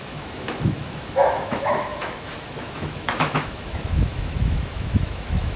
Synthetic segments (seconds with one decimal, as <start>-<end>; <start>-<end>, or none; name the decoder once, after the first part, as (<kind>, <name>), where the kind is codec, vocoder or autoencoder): 0.0-5.6 (autoencoder, DAC-VAE)